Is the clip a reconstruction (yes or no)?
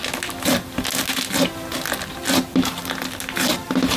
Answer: no